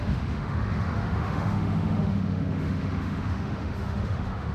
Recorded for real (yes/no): no